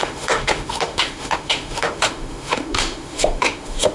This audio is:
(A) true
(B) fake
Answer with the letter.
B